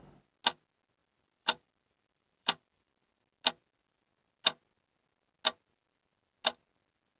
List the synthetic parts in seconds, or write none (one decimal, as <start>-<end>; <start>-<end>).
1.0-2.9